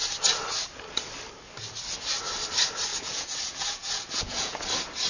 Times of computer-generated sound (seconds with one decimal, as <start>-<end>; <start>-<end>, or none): 2.9-4.6